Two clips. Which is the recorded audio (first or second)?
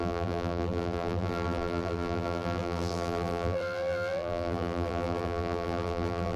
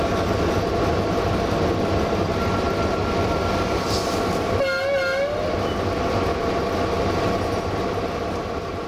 second